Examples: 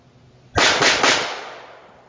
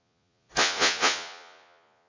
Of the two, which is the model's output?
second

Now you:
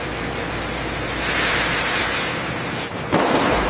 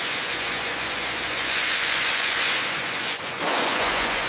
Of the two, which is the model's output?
second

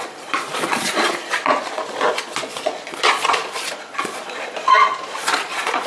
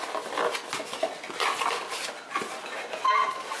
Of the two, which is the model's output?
first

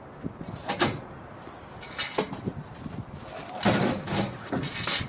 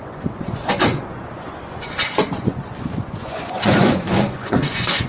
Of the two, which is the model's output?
second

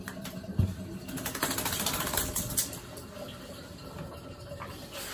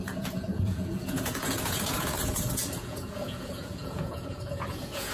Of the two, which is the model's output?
second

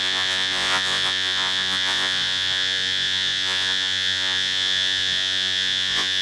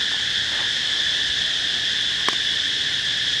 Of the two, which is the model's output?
first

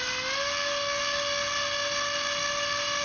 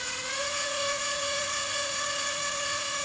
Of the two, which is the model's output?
second